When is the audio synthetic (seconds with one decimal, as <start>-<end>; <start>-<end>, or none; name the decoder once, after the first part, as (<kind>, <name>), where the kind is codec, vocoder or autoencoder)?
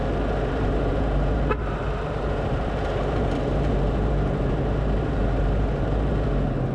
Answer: 0.5-6.7 (vocoder, BigVGAN v2)